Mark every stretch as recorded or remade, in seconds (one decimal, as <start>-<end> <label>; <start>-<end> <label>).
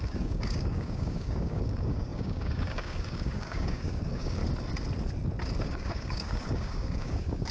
0.0-4.4 remade; 4.4-5.7 recorded; 5.7-7.5 remade